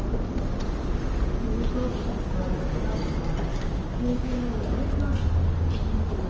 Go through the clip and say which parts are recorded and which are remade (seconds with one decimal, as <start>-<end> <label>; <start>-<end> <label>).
0.0-3.5 recorded; 3.5-5.1 remade; 5.1-6.3 recorded